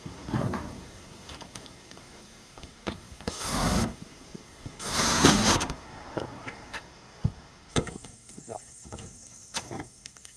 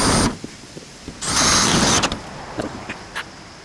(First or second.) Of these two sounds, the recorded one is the second